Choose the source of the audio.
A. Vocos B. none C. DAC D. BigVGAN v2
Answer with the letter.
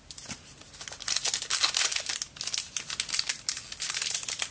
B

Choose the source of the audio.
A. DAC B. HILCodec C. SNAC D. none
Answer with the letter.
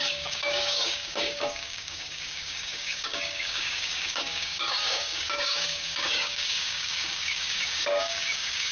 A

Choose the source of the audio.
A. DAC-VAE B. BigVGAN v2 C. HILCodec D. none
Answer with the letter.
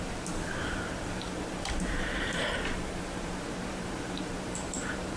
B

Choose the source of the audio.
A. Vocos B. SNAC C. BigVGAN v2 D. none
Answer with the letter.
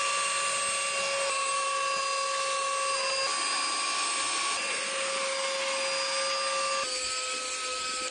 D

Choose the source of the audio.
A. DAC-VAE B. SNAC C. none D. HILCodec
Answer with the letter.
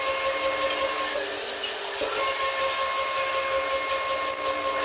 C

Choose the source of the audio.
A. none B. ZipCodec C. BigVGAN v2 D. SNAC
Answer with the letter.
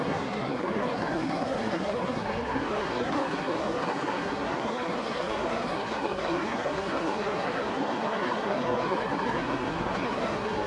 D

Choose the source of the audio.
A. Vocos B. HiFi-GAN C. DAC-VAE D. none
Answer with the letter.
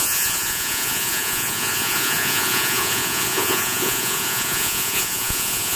A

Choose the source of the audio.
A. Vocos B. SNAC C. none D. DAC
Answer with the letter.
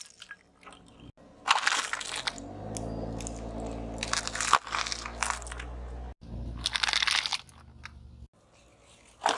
C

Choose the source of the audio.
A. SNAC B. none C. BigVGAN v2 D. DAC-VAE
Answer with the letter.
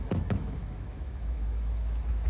D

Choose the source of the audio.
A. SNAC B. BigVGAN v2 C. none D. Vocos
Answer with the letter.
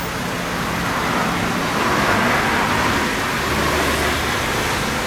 C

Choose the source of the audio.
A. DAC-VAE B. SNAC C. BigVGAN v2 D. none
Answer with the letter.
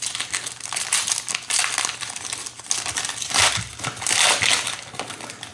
D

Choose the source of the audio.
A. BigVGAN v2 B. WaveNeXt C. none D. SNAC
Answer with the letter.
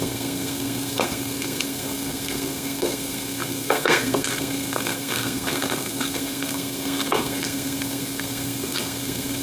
D